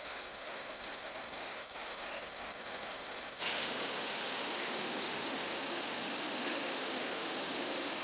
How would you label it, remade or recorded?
remade